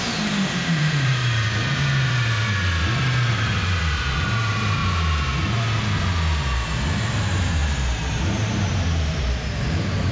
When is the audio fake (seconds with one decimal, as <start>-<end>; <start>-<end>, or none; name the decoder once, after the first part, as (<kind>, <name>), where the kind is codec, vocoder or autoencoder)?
0.0-1.2 (vocoder, BigVGAN v2); 3.3-4.8; 7.0-10.1